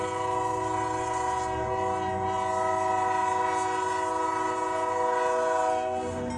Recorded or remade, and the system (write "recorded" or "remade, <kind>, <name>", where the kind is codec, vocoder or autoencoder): recorded